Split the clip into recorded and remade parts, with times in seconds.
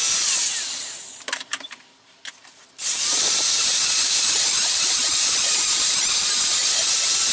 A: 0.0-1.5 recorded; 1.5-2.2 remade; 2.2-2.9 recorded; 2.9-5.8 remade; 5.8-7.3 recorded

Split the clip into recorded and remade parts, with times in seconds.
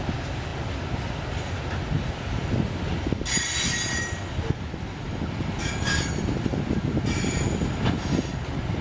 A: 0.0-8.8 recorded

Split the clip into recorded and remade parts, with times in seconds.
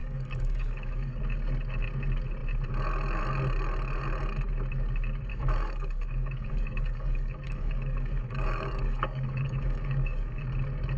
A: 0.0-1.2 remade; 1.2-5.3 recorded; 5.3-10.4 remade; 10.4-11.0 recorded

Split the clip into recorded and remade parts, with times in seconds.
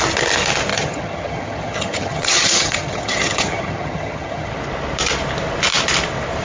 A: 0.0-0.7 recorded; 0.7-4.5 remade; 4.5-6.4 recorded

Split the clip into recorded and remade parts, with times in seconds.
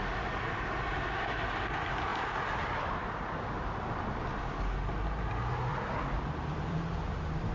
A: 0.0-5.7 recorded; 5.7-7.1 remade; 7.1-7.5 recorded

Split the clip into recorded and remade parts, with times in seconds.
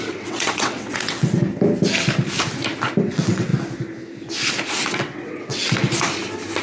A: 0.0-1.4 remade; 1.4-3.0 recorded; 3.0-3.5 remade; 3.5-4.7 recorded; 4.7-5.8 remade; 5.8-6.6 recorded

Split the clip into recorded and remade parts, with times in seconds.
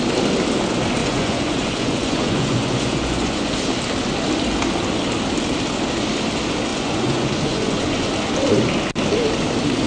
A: 0.0-1.0 recorded; 1.0-3.5 remade; 3.5-6.7 recorded; 6.7-8.1 remade; 8.1-9.9 recorded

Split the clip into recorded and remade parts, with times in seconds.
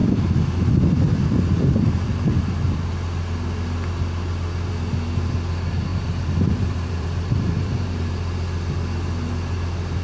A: 0.0-5.9 recorded; 5.9-8.1 remade; 8.1-10.0 recorded